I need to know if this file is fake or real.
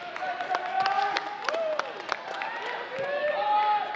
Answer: real